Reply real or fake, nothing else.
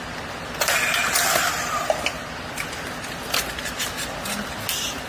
real